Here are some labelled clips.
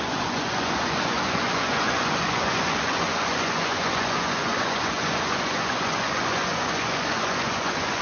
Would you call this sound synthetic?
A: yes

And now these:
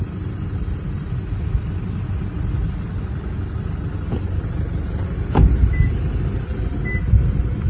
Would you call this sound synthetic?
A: no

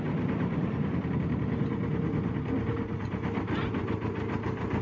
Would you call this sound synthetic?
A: no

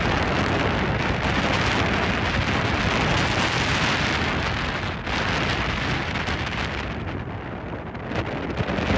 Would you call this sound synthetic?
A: no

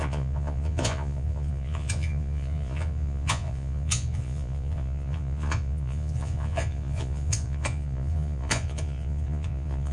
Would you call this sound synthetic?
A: yes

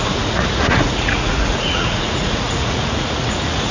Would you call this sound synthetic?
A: yes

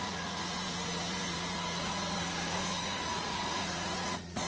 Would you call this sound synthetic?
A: yes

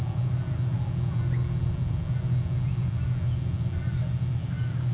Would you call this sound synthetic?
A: no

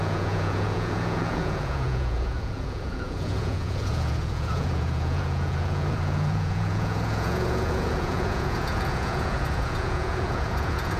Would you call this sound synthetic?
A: yes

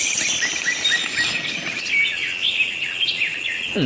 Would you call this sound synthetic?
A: no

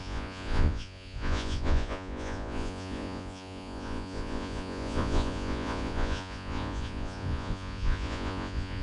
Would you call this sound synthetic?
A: yes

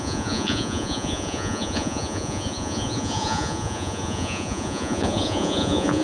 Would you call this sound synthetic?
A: yes